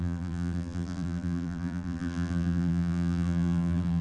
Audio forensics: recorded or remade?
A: remade